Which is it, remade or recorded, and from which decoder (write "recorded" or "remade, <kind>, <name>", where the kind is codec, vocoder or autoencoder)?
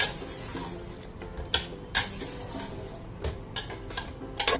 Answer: recorded